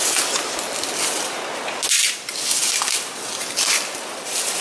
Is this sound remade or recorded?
recorded